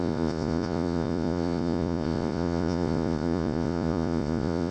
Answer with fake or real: fake